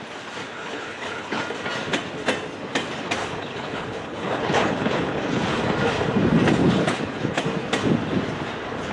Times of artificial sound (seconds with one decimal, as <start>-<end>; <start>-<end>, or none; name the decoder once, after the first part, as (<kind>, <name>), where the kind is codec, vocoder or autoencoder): 0.4-1.4 (codec, HILCodec); 3.2-5.6; 6.6-7.4